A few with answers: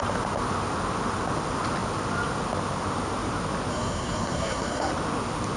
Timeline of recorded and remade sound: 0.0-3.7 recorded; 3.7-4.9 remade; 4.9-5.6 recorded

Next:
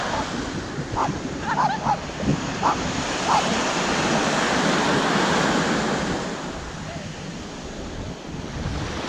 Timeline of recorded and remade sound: 0.0-2.3 recorded; 2.3-3.4 remade; 3.4-9.1 recorded

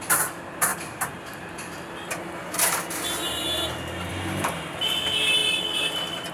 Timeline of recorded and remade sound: 0.0-6.3 recorded

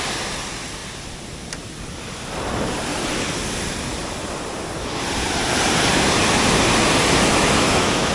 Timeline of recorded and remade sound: 0.0-7.3 recorded; 7.3-8.1 remade